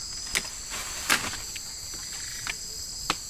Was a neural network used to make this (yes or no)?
no